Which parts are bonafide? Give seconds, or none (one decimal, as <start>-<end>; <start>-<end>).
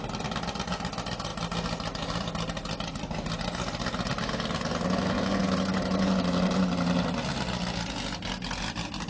0.0-5.4; 6.1-9.1